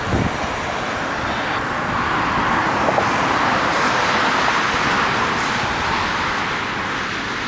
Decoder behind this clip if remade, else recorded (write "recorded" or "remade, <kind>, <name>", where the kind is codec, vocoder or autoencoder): recorded